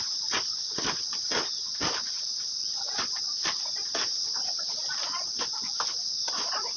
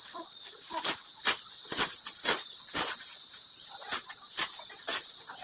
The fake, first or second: second